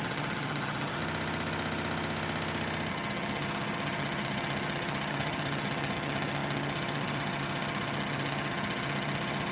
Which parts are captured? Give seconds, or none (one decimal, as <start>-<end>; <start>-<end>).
1.0-2.9